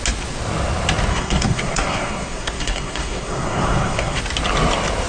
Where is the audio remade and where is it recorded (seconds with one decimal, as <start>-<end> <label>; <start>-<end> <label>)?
0.0-1.1 recorded; 1.1-4.2 remade; 4.2-5.1 recorded